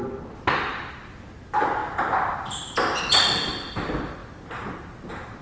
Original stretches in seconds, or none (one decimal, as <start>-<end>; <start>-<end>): 0.0-0.7; 1.4-1.8; 2.4-5.4